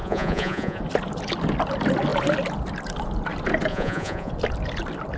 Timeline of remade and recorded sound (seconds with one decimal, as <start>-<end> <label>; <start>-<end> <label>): 0.0-0.8 remade; 0.8-3.7 recorded; 3.7-4.3 remade; 4.3-5.2 recorded